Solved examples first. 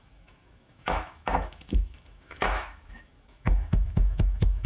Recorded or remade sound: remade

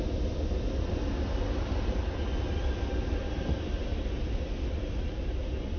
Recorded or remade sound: recorded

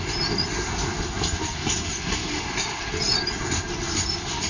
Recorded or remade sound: recorded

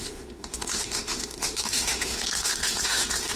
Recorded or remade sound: remade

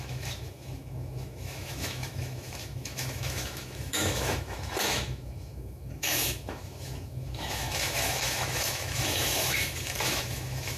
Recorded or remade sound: remade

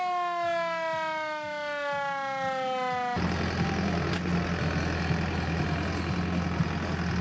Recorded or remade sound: recorded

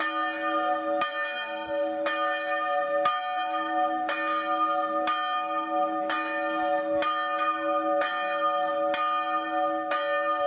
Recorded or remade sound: recorded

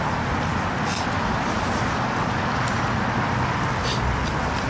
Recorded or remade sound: recorded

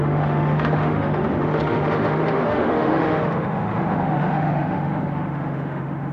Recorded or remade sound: remade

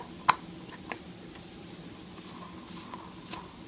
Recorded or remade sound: recorded